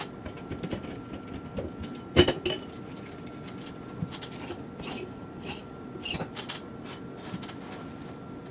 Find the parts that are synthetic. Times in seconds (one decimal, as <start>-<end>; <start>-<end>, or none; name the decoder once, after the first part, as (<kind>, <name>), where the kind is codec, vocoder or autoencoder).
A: none